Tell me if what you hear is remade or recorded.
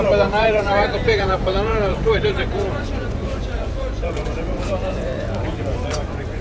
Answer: remade